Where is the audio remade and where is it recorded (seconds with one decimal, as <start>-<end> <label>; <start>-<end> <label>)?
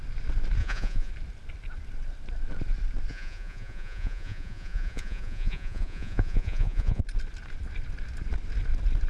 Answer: 0.0-0.6 recorded; 0.6-1.1 remade; 1.1-3.1 recorded; 3.1-7.0 remade; 7.0-9.1 recorded